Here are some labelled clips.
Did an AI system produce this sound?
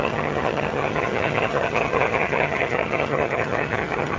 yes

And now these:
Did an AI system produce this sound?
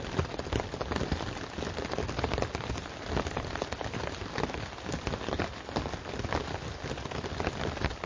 no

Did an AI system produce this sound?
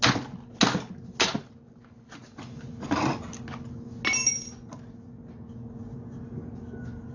no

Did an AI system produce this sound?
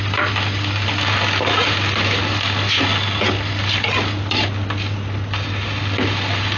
no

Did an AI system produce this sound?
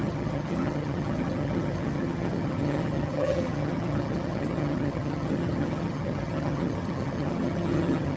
yes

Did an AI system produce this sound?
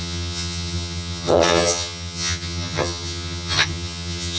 yes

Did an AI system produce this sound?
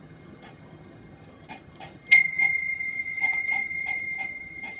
yes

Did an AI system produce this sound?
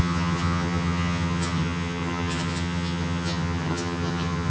yes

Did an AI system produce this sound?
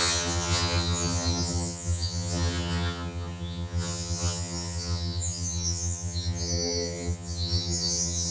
yes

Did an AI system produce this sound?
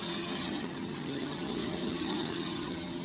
yes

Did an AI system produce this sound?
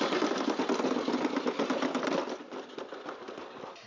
no